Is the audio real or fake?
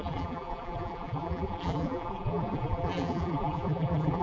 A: fake